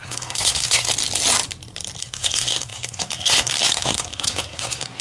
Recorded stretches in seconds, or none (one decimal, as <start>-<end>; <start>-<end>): 0.9-2.0